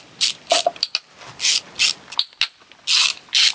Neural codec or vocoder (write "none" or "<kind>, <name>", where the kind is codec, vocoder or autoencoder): none